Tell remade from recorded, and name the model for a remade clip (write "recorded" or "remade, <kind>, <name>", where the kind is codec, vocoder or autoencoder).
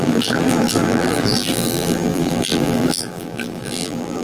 remade, vocoder, BigVGAN v2